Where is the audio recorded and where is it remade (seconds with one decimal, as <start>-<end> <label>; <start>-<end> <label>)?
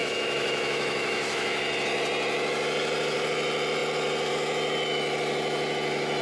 0.0-1.6 remade; 1.6-6.2 recorded